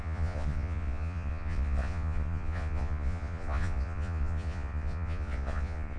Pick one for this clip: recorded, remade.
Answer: remade